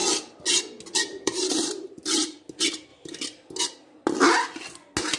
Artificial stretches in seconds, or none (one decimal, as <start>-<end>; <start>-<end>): 1.1-2.4

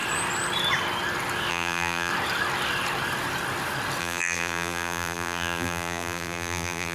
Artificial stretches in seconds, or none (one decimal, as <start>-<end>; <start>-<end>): 1.5-2.1; 4.0-6.9

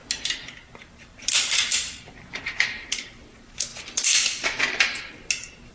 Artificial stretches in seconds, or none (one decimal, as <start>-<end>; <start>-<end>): 0.8-3.7

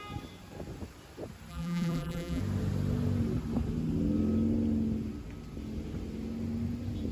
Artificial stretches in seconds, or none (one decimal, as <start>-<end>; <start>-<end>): 1.5-2.4

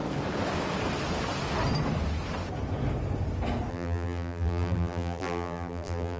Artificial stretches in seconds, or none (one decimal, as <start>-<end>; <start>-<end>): 3.7-6.2

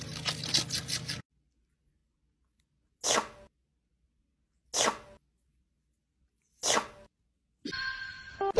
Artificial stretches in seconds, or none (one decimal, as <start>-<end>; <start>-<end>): none

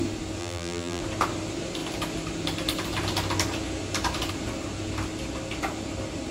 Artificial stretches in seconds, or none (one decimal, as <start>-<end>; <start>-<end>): 0.4-1.0